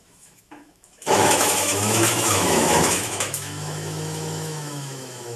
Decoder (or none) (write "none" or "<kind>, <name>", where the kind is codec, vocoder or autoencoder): autoencoder, DAC-VAE